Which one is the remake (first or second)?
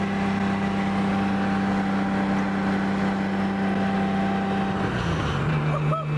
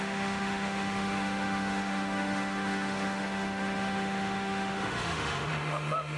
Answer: second